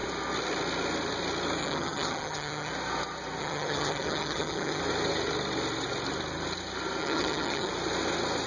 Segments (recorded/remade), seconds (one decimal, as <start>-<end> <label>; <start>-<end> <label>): 0.0-1.6 recorded; 1.6-2.7 remade; 2.7-3.4 recorded; 3.4-4.8 remade; 4.8-7.0 recorded; 7.0-7.7 remade; 7.7-8.5 recorded